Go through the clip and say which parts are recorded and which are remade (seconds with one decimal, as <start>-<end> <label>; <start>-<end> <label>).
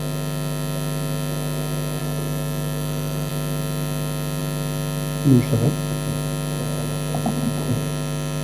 0.0-2.0 recorded; 2.0-3.3 remade; 3.3-8.4 recorded